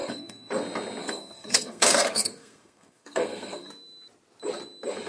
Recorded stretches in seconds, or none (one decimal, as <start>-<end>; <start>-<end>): 0.5-1.0; 3.7-5.1